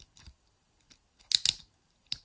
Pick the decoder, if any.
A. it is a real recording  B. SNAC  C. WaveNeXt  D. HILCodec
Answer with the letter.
A